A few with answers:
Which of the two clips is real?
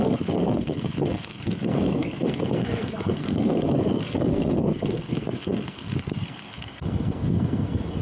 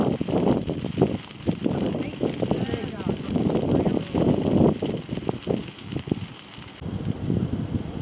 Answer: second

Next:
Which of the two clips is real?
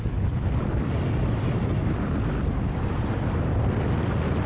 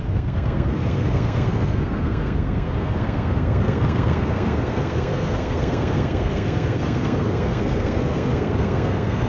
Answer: first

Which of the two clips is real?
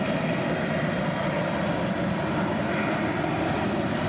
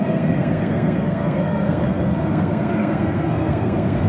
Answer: first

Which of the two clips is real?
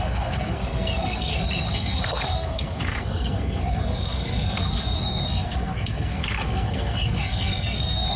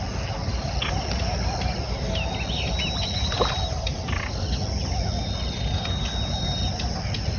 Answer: second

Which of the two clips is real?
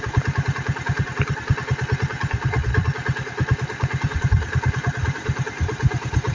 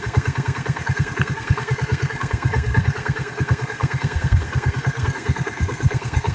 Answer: first